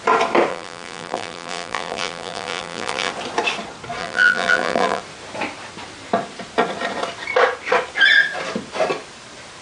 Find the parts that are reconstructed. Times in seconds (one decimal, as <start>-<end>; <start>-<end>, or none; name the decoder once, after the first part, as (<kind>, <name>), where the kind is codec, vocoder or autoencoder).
0.5-3.1 (vocoder, BigVGAN v2); 4.0-5.0